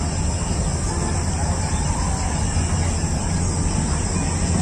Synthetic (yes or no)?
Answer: no